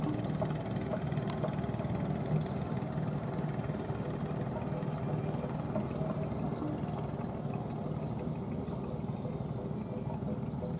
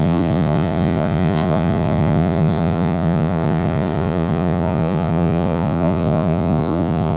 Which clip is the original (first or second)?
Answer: first